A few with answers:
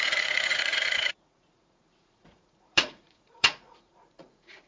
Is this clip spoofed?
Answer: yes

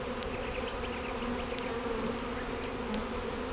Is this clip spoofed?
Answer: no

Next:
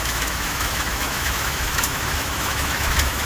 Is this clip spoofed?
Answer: yes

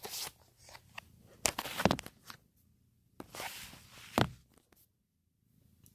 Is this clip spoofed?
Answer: yes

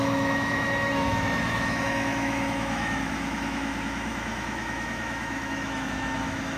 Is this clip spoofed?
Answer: yes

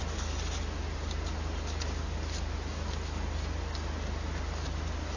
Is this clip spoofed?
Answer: no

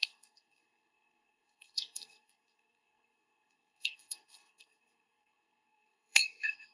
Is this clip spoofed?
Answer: yes